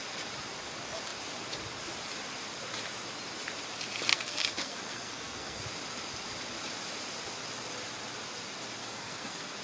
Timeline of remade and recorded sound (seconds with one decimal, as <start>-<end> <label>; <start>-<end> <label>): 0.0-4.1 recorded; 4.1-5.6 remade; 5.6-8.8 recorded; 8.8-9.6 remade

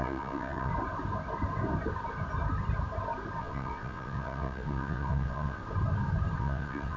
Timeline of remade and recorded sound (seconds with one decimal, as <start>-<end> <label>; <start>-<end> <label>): 0.0-0.7 remade; 0.7-3.4 recorded; 3.4-5.6 remade; 5.6-6.4 recorded; 6.4-7.0 remade

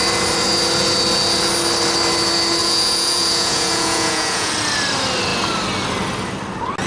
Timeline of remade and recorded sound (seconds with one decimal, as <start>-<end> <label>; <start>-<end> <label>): 0.0-2.6 recorded; 2.6-4.5 remade; 4.5-6.9 recorded

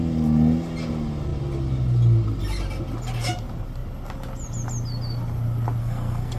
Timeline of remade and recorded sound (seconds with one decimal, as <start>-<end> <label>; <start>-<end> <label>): 0.0-5.8 recorded; 5.8-6.4 remade